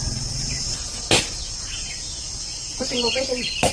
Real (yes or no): yes